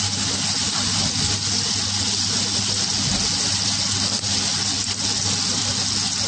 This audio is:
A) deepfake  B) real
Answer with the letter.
B